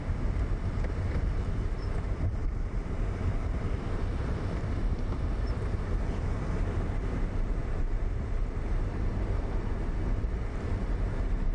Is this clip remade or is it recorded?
remade